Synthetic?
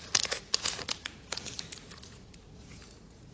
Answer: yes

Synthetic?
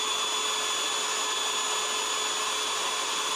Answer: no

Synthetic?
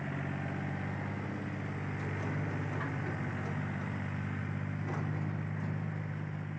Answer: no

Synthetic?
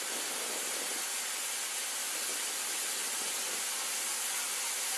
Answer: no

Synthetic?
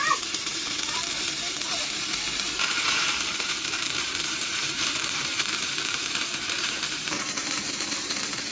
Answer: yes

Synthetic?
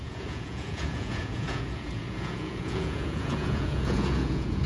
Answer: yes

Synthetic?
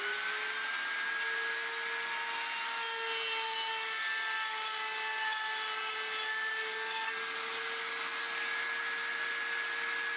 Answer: no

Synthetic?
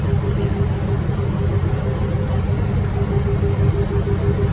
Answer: no